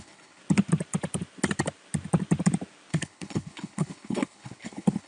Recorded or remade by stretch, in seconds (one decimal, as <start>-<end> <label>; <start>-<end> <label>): 0.0-0.4 remade; 0.4-2.9 recorded; 2.9-5.1 remade